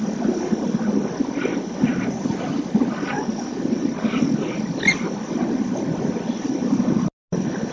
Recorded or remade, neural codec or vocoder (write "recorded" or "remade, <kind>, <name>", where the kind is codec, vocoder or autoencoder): recorded